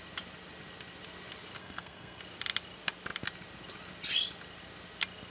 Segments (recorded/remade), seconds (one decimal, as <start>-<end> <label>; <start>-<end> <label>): 0.0-1.6 recorded; 1.6-2.2 remade; 2.2-5.3 recorded